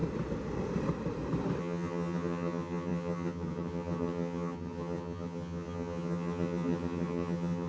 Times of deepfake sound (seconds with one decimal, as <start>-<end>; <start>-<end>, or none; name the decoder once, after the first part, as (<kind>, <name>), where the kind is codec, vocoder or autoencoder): 1.6-7.7 (vocoder, HiFi-GAN)

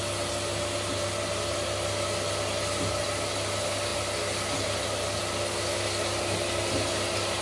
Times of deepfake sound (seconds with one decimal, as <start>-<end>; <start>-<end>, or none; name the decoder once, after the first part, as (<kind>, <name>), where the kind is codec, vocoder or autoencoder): none